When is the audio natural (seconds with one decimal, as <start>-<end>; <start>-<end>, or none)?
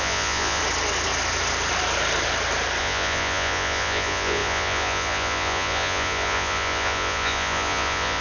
0.6-2.8